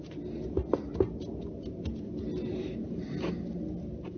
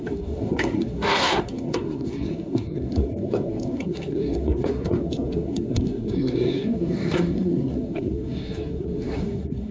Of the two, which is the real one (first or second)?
first